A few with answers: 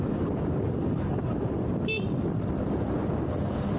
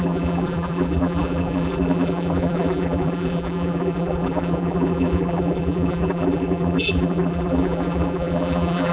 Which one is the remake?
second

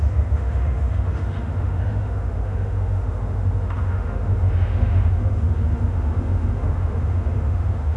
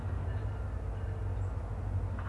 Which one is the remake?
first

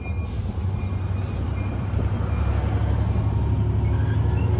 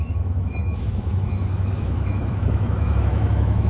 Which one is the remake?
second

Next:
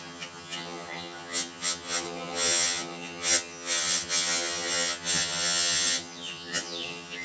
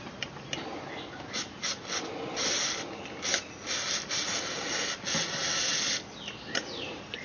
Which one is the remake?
first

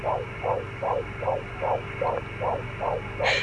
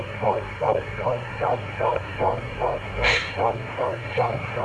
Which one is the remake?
second